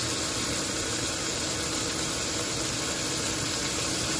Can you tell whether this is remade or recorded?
recorded